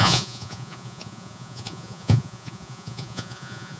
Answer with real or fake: fake